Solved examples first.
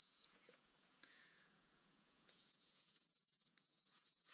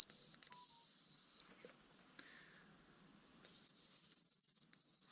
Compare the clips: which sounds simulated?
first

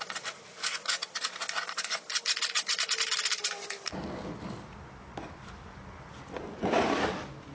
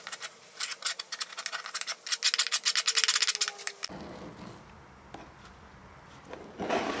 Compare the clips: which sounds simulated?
first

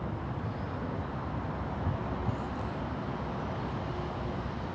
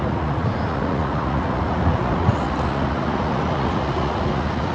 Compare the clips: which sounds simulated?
second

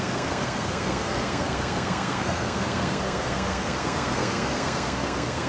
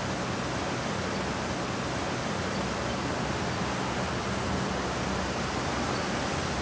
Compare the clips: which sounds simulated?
first